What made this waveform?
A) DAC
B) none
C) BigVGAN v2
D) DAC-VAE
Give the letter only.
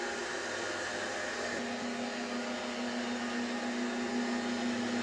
B